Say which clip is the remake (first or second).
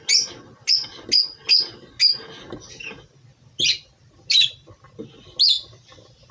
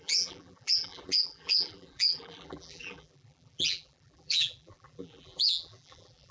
second